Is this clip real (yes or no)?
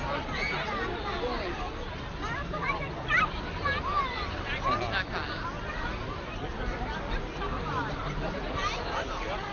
yes